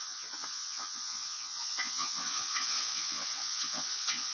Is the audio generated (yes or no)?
yes